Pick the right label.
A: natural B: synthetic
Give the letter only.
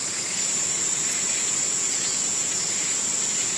B